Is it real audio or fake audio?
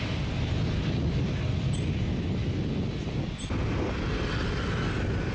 real